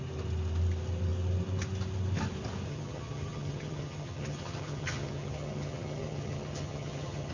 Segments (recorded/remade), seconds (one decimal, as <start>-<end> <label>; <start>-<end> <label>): 0.0-2.7 recorded; 2.7-7.3 remade

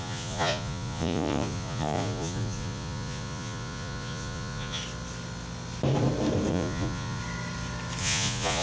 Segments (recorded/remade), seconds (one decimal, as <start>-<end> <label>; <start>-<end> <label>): 0.0-4.8 remade; 4.8-6.5 recorded; 6.5-7.2 remade; 7.2-8.0 recorded; 8.0-8.6 remade

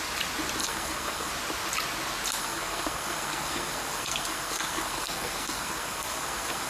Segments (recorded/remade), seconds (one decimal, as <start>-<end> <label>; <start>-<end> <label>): 0.0-0.6 recorded; 0.6-1.3 remade; 1.3-2.4 recorded; 2.4-6.7 remade

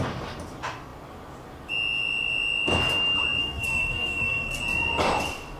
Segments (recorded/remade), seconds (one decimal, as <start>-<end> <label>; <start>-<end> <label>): 0.0-3.4 recorded; 3.4-4.6 remade; 4.6-5.6 recorded

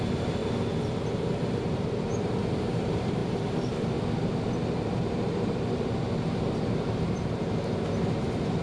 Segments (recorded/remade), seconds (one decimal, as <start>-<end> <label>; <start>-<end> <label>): 0.0-0.4 remade; 0.4-0.9 recorded; 0.9-8.6 remade

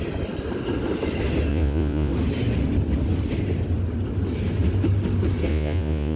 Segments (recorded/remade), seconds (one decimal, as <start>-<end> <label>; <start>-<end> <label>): 0.0-1.5 recorded; 1.5-2.1 remade; 2.1-5.5 recorded; 5.5-6.2 remade